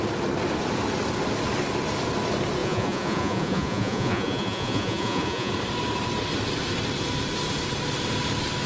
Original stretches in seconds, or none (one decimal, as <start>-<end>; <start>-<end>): 0.0-2.6; 5.5-8.7

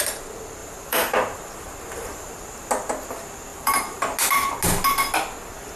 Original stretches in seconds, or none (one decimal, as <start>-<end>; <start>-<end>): 0.0-0.6; 2.3-3.5; 4.0-5.8

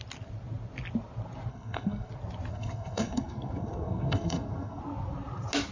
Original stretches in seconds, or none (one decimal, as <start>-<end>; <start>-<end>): 0.0-1.5; 2.1-2.5; 4.8-5.7